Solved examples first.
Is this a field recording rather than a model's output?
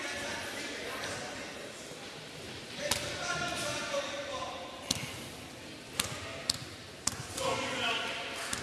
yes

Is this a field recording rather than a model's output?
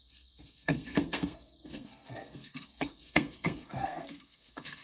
no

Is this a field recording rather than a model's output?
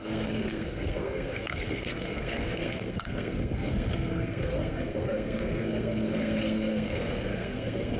no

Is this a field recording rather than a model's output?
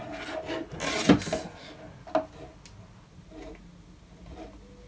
yes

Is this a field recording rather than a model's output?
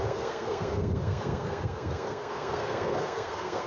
no